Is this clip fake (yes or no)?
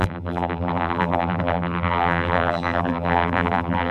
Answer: yes